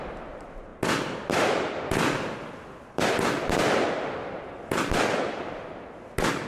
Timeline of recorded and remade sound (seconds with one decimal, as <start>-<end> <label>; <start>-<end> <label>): 0.0-6.5 recorded